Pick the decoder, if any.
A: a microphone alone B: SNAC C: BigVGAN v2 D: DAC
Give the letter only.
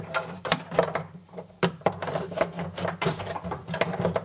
C